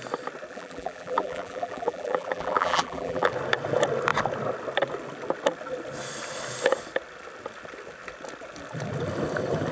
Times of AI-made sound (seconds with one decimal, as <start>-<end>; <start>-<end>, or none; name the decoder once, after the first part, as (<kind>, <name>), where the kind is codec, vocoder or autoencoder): 0.5-3.3 (vocoder, BigVGAN v2)

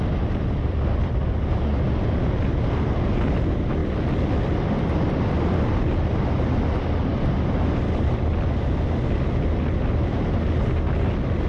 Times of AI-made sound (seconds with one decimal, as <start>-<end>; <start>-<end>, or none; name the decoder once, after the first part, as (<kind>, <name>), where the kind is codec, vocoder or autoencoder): none

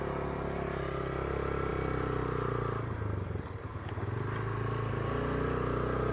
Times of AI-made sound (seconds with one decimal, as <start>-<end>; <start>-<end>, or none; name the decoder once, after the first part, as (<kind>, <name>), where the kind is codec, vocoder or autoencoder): none

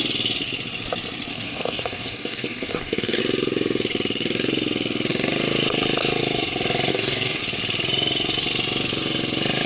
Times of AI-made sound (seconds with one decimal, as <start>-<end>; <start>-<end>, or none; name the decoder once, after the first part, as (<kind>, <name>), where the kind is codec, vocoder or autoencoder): 1.3-3.2 (codec, DAC); 6.9-7.4

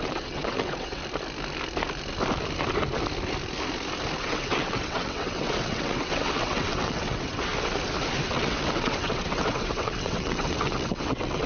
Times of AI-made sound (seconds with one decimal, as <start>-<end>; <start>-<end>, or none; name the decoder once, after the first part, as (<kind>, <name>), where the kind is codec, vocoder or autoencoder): 0.0-1.0 (vocoder, WaveNeXt); 4.2-7.5; 8.2-11.5

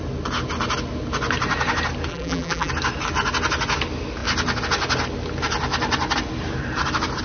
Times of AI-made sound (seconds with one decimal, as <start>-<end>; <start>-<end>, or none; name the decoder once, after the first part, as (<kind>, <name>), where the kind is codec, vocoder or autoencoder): 2.1-2.7 (vocoder, BigVGAN v2)

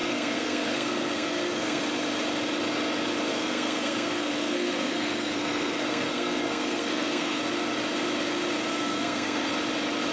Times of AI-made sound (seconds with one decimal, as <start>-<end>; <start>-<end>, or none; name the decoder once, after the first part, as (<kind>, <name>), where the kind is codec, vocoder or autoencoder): 0.0-1.8 (codec, SNAC); 3.3-7.4; 8.7-9.5